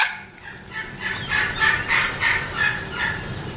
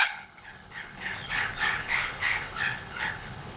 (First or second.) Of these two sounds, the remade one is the second